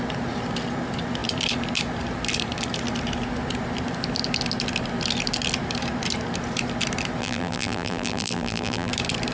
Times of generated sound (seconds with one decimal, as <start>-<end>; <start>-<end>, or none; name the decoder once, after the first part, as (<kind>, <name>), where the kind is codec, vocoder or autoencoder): 7.2-8.9 (vocoder, BigVGAN v2)